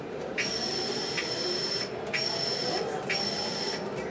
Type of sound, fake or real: real